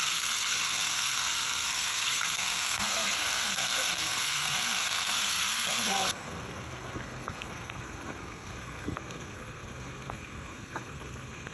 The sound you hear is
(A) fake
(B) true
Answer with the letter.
A